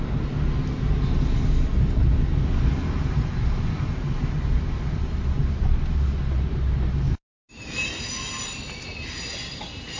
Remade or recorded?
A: recorded